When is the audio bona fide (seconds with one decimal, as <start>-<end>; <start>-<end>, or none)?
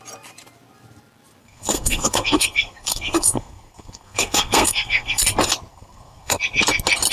0.0-1.4; 5.2-5.7; 6.4-7.1